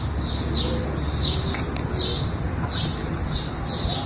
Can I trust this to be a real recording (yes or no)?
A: yes